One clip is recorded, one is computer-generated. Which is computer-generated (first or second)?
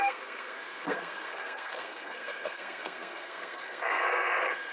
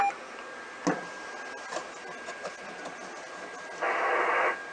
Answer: first